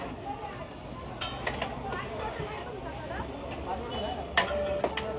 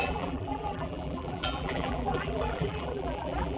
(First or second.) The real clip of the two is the first